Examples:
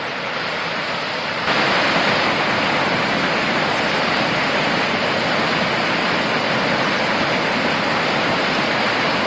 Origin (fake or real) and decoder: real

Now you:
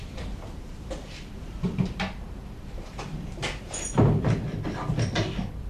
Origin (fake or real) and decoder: fake, vocoder, BigVGAN v2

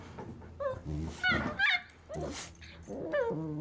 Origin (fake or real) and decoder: real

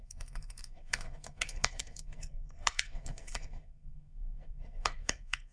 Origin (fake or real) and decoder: fake, codec, SNAC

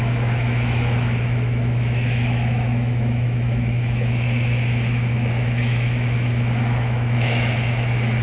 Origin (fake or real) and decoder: fake, autoencoder, DAC-VAE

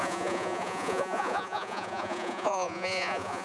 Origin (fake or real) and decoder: fake, vocoder, Vocos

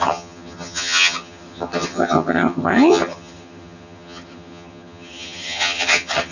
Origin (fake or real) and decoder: fake, vocoder, HiFi-GAN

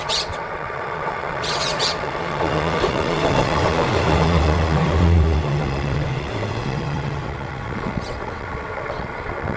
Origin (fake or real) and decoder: fake, vocoder, WaveNeXt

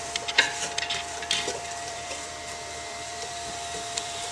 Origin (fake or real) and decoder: fake, vocoder, BigVGAN v2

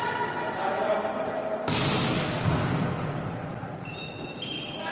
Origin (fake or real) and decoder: real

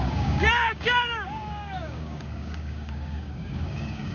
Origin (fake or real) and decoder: fake, codec, DAC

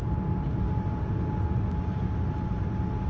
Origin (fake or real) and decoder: real